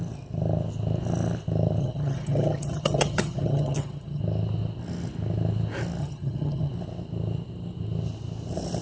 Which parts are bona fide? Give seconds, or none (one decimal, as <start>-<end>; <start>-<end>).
0.0-1.8; 4.2-6.0; 6.7-8.8